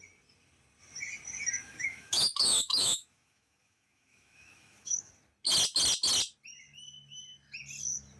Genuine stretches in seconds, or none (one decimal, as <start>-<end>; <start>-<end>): 0.0-1.6; 5.1-8.2